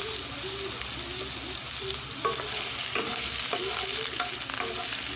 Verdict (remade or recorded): recorded